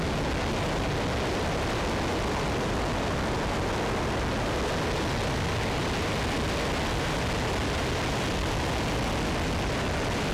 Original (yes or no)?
yes